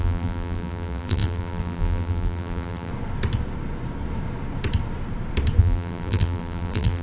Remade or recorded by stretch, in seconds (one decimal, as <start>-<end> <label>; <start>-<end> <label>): 0.0-2.9 remade; 2.9-5.6 recorded; 5.6-7.0 remade